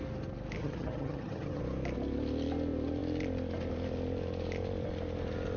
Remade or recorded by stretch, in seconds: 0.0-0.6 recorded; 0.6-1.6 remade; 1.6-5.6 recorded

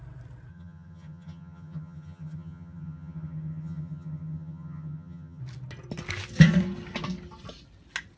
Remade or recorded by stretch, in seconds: 0.0-0.5 recorded; 0.5-5.4 remade; 5.4-8.2 recorded

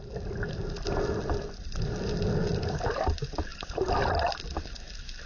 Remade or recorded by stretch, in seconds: 0.0-5.3 recorded

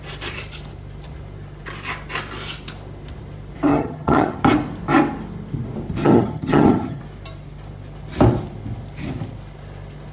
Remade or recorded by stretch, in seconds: 0.0-3.7 recorded; 3.7-4.4 remade; 4.4-6.0 recorded; 6.0-7.0 remade; 7.0-10.1 recorded

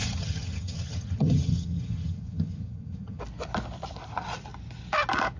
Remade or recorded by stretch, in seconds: 0.0-3.2 remade; 3.2-5.4 recorded

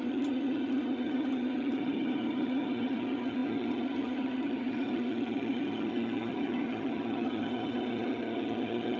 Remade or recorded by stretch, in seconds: 0.0-9.0 remade

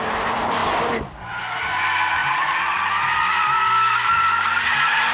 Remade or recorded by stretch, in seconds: 0.0-5.1 recorded

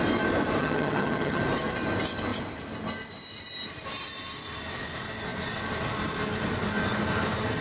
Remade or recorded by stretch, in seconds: 0.0-0.6 recorded; 0.6-1.4 remade; 1.4-7.6 recorded